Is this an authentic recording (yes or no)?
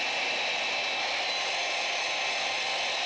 yes